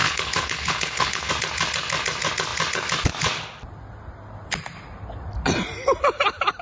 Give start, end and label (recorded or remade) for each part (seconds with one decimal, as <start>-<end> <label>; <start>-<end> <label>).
0.0-1.3 remade; 1.3-6.6 recorded